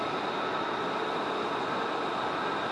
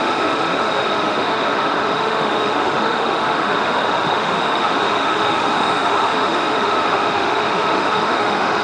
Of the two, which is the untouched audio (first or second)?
first